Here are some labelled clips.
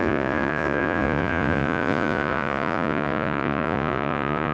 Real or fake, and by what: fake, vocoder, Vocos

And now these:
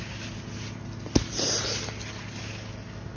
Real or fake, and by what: real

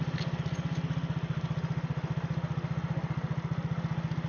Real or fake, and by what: real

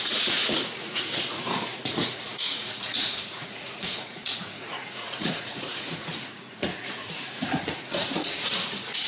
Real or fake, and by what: fake, vocoder, Vocos